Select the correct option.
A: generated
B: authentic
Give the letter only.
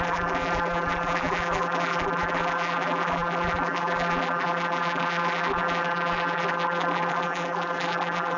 A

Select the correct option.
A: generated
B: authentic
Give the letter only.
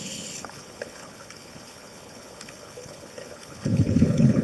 A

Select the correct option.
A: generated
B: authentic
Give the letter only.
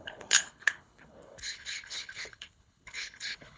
A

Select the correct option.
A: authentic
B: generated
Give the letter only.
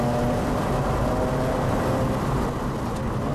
A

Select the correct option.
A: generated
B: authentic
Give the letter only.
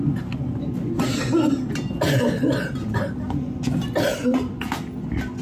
B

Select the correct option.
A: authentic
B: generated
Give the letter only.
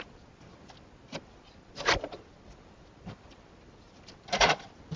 A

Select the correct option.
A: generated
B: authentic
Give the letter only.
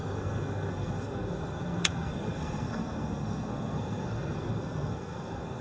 A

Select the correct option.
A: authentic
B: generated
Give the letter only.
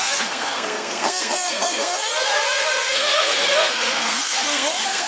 B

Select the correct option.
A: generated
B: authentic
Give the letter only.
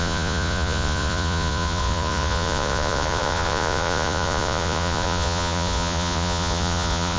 A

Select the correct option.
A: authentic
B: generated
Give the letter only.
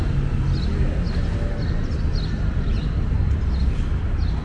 A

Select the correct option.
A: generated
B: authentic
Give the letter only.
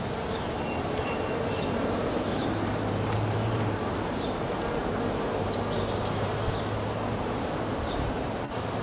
A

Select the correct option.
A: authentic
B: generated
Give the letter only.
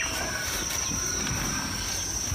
A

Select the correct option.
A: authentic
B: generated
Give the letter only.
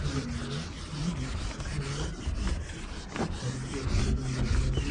A